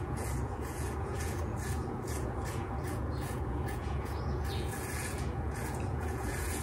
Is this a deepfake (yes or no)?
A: yes